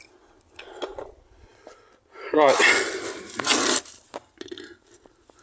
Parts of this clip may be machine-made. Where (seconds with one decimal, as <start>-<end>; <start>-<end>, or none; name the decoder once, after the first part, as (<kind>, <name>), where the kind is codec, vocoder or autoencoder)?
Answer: none